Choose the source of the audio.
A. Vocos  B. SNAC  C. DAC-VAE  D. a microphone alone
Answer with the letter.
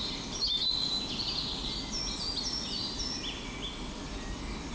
D